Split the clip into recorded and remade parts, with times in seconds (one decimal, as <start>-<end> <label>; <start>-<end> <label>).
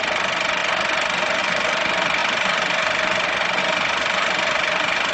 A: 0.0-0.6 remade; 0.6-1.4 recorded; 1.4-5.1 remade